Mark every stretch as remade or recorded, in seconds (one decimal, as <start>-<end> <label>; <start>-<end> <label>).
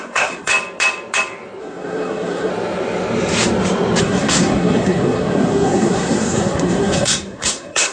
0.0-0.5 remade; 0.5-1.6 recorded; 1.6-2.5 remade; 2.5-4.0 recorded; 4.0-7.9 remade